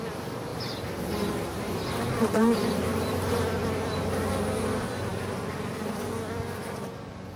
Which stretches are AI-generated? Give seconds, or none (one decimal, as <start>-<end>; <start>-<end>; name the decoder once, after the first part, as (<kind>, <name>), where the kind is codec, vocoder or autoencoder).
0.5-3.3 (vocoder, BigVGAN v2)